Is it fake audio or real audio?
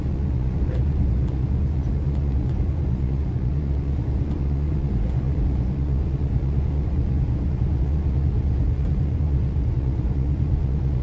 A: fake